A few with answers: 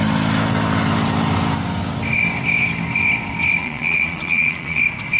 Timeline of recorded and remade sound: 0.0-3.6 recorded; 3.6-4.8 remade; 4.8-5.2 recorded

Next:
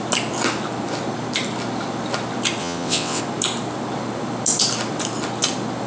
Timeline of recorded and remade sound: 0.0-2.6 recorded; 2.6-3.2 remade; 3.2-5.9 recorded

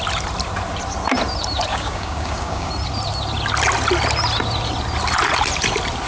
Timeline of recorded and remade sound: 0.0-1.7 recorded; 1.7-2.7 remade; 2.7-6.1 recorded